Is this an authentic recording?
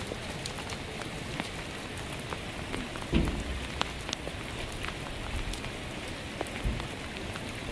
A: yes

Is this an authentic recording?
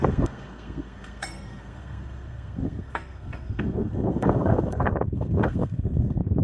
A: no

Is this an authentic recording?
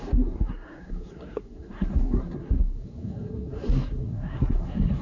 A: no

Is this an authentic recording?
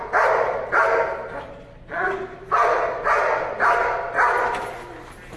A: yes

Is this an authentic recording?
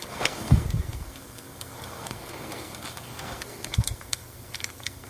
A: no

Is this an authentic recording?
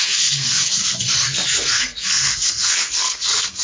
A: no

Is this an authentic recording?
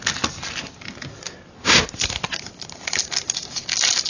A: yes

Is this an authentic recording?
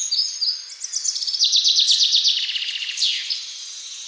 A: yes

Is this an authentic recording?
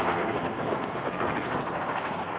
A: no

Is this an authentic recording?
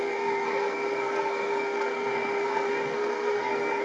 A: no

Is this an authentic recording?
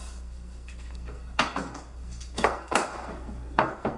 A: no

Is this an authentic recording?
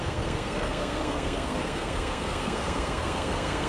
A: no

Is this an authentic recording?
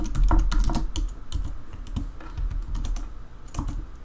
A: yes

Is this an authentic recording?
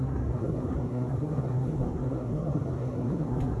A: no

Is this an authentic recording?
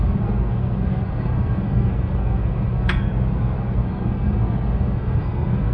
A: no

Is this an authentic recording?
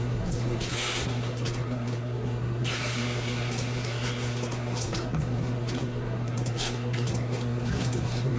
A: no